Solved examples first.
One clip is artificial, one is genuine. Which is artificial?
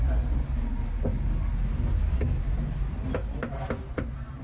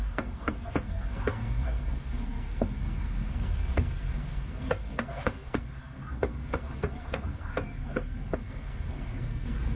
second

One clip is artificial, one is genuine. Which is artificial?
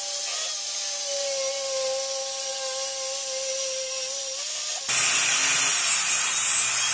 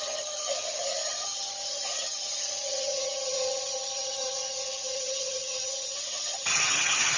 second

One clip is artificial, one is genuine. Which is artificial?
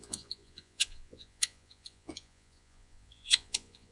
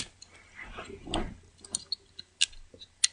first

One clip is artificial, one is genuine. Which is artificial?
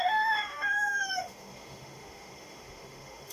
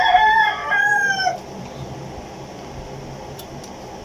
first